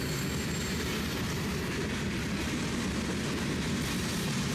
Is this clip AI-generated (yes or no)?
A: no